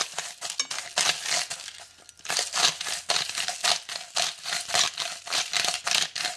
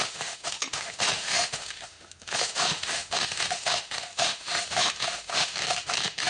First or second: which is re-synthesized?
second